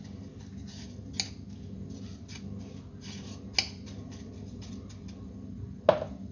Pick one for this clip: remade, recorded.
recorded